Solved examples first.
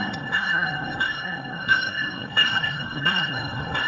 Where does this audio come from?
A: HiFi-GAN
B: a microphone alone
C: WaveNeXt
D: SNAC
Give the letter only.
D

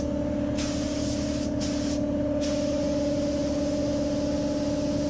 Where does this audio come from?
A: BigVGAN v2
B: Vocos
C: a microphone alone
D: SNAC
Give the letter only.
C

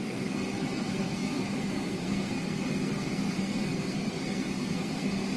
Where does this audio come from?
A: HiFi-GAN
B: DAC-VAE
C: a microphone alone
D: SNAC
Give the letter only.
D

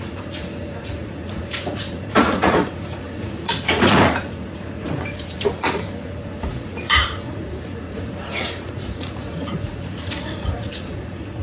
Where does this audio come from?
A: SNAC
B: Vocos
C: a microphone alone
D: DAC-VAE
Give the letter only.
B